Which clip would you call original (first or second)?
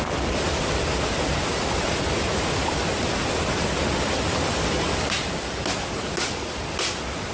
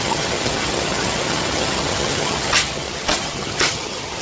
first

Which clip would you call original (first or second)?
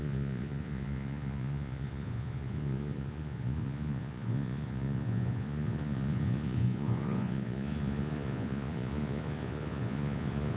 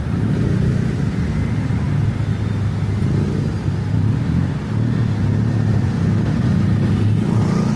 second